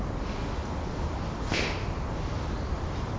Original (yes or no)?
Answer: yes